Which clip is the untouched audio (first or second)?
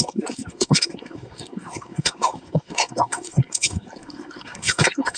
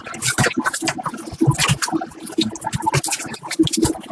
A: second